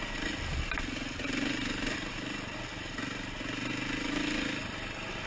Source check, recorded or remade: recorded